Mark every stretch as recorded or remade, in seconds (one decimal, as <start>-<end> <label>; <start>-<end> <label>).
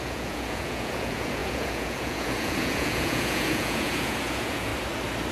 0.0-4.7 remade; 4.7-5.3 recorded